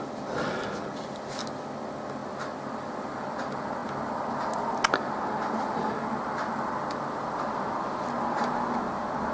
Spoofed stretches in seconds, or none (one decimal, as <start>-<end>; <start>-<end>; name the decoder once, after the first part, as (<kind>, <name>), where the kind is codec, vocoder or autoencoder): none